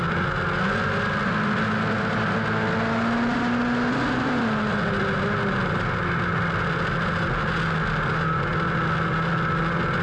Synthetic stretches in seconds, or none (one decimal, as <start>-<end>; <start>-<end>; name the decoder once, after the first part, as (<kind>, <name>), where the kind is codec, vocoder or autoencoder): none